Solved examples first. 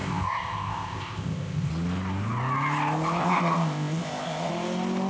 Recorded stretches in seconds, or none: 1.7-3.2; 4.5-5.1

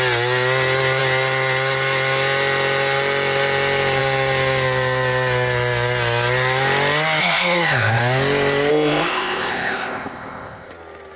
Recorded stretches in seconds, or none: 0.0-7.2; 8.0-8.7; 10.7-11.2